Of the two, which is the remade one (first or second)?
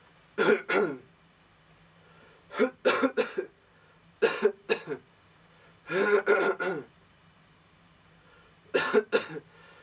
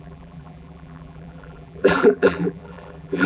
second